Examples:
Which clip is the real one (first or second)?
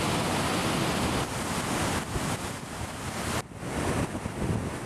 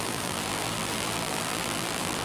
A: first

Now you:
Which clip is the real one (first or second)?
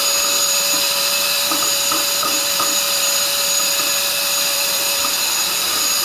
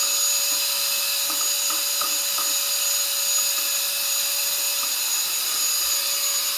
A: second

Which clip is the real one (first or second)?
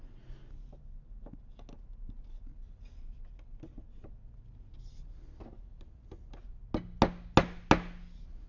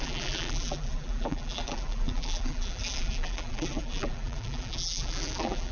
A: first